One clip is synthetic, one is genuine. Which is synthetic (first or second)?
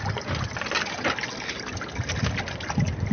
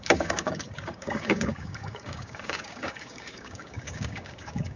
second